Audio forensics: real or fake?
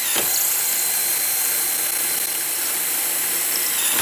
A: real